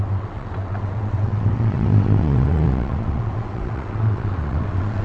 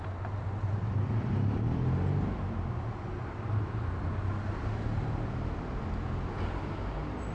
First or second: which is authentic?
second